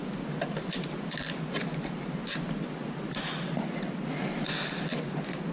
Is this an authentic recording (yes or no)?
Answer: yes